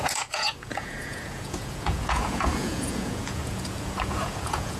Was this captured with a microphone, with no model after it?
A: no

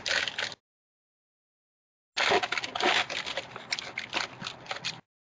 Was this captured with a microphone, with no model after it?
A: yes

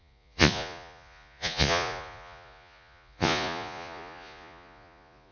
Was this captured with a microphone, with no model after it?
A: no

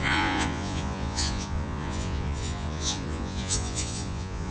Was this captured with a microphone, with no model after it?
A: no